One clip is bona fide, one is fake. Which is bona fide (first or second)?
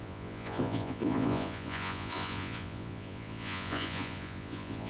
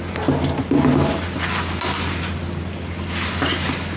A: second